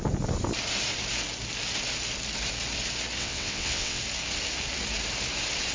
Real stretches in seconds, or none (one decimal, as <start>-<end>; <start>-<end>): 0.0-3.2; 4.0-5.7